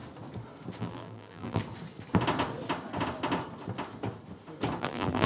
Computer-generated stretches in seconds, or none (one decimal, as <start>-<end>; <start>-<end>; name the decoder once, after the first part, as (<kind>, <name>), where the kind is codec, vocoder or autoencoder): 0.8-1.6 (vocoder, BigVGAN v2); 4.8-5.3

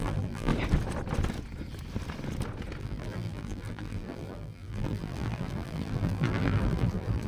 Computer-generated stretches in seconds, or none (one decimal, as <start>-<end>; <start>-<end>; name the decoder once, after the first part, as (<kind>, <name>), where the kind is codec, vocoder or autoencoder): 0.0-0.5 (vocoder, BigVGAN v2); 2.8-7.3

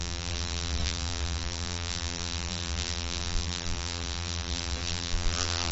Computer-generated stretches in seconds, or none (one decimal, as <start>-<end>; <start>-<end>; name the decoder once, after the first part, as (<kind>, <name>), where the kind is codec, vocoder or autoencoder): 0.0-5.7 (vocoder, BigVGAN v2)

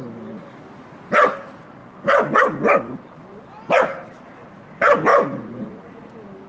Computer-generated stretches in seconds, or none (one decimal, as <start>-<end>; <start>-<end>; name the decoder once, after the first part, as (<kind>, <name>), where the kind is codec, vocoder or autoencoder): 1.8-4.5 (vocoder, BigVGAN v2); 5.1-6.1

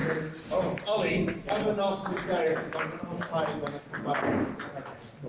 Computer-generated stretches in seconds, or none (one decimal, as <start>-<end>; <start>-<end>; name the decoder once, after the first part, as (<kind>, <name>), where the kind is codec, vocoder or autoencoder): 1.1-2.5 (vocoder, BigVGAN v2); 4.7-5.3